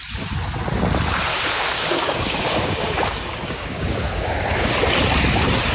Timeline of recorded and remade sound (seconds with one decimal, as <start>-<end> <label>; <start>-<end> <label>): 0.0-1.3 recorded; 1.3-4.7 remade; 4.7-5.7 recorded